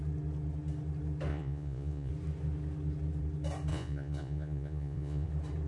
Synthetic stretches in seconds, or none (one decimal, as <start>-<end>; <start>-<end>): 1.3-2.1; 3.7-5.3